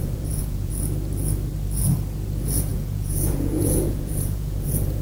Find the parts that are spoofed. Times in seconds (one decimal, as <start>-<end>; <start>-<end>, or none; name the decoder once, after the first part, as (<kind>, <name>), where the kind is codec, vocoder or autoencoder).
0.0-0.7 (vocoder, Vocos); 2.7-5.0